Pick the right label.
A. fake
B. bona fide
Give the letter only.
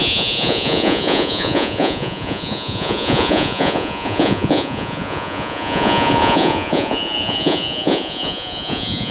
A